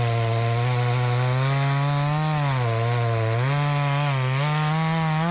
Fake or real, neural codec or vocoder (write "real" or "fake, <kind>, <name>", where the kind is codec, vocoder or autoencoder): real